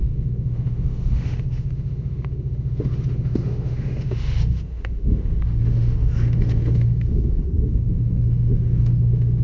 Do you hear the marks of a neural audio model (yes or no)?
yes